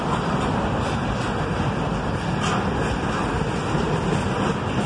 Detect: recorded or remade recorded